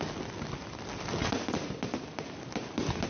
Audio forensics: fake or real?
real